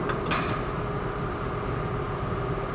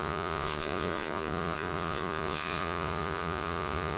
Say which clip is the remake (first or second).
second